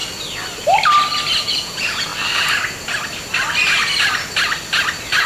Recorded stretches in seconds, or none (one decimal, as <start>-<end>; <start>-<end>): 0.0-1.4; 2.1-5.3